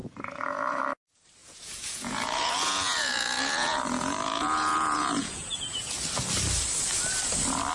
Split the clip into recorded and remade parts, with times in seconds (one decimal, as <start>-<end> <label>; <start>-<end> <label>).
0.0-0.8 remade; 0.8-1.4 recorded; 1.4-6.0 remade; 6.0-7.7 recorded